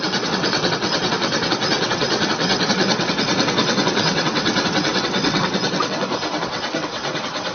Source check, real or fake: fake